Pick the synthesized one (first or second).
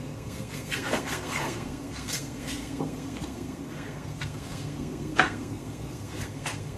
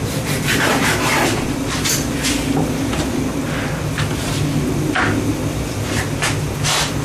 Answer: first